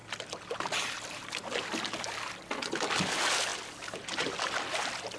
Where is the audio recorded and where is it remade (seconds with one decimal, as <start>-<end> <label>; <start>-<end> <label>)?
0.0-5.2 recorded